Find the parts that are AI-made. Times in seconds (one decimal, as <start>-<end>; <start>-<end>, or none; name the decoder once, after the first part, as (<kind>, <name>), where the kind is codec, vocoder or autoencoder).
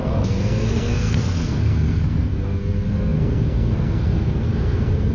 0.0-5.1 (codec, SNAC)